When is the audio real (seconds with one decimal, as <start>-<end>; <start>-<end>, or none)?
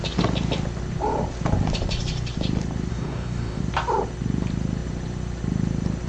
0.0-2.9; 3.6-6.1